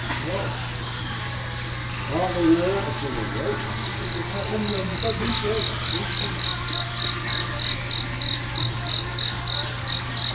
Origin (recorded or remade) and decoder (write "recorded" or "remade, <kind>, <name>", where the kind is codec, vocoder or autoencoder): recorded